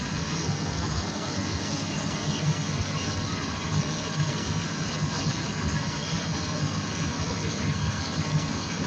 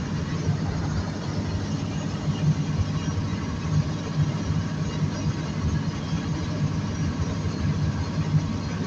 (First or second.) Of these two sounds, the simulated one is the first